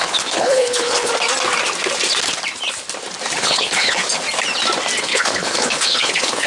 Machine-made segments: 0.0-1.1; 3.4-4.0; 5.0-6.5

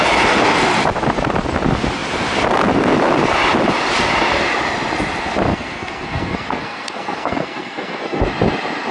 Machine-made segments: 5.5-8.2

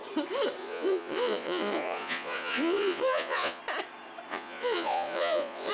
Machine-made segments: 0.6-3.6; 4.3-5.7

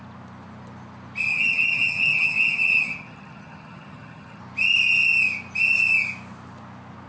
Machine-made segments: 1.3-4.4

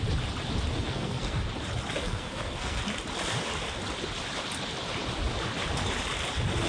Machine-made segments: 0.7-1.4; 2.0-2.8